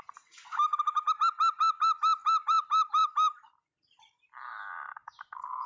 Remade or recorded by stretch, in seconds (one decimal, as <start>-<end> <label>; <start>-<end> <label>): 0.0-2.2 recorded; 2.2-4.0 remade; 4.0-5.0 recorded; 5.0-5.7 remade